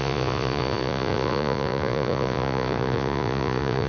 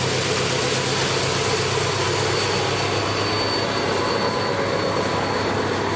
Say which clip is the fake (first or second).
first